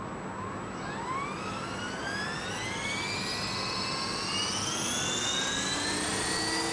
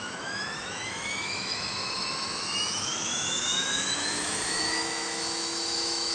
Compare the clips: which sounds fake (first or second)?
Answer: second